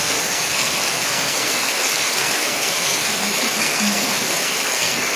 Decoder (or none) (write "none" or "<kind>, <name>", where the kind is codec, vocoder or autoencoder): codec, SNAC